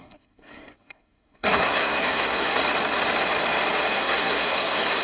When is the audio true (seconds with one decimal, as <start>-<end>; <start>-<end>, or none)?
2.6-3.9